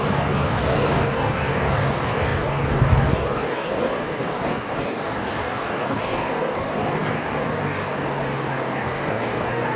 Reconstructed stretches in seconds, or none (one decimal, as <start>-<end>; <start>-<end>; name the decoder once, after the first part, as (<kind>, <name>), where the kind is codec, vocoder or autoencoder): 0.0-9.8 (codec, DAC)